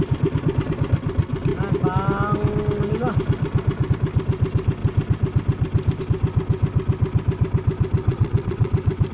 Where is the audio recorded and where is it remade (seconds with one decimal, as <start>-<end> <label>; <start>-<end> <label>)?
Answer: 0.0-8.0 recorded; 8.0-8.7 remade; 8.7-9.1 recorded